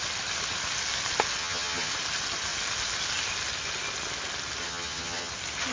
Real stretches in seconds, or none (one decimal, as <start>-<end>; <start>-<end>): 0.0-1.4; 1.9-4.6; 5.3-5.7